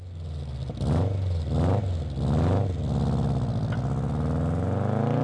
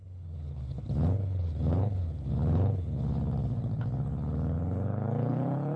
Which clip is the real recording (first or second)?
first